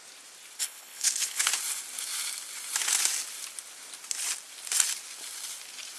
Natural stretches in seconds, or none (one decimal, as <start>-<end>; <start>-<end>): 0.0-0.6; 1.5-6.0